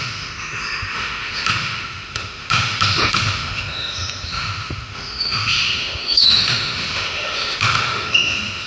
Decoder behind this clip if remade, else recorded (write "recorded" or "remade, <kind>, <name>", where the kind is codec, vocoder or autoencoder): remade, autoencoder, DAC-VAE